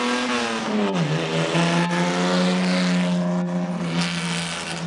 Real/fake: real